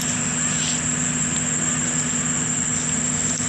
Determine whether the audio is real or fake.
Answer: real